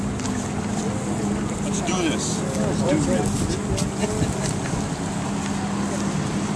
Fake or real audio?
real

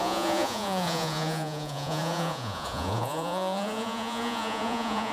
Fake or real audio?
fake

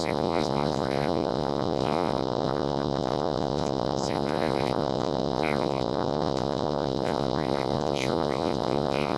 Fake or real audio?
fake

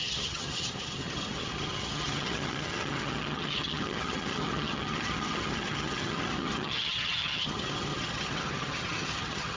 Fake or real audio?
fake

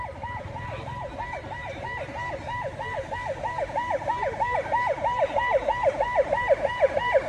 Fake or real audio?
real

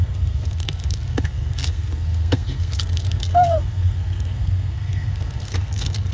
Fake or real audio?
fake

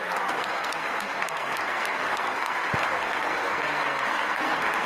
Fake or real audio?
fake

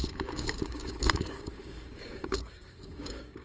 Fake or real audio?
fake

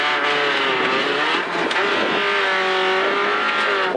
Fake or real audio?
real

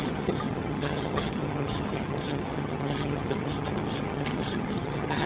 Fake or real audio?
fake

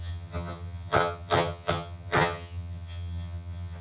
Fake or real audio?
fake